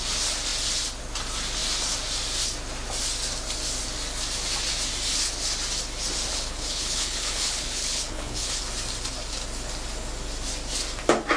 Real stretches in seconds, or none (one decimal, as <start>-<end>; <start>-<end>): 0.0-6.3; 8.6-11.4